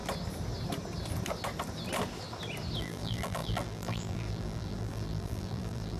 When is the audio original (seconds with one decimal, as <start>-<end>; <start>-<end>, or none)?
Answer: 0.0-2.8